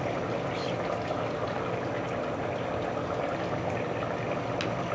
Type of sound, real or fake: real